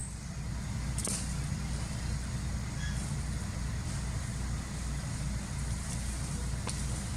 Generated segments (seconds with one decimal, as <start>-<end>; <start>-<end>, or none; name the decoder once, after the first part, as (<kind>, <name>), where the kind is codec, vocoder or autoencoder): none